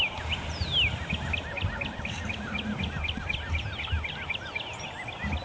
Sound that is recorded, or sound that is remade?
recorded